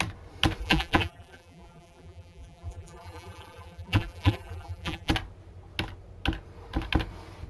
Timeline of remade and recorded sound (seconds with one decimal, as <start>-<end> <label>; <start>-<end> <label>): 0.0-0.6 recorded; 0.6-5.1 remade; 5.1-7.5 recorded